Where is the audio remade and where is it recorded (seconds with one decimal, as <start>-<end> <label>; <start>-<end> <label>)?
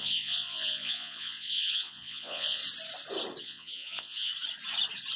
0.0-2.6 remade; 2.6-3.4 recorded; 3.4-4.3 remade; 4.3-5.2 recorded